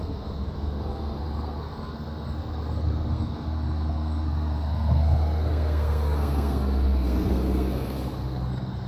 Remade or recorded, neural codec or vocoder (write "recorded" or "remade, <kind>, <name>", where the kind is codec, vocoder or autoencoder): remade, codec, SNAC